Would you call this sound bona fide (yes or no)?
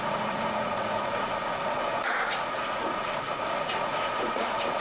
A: no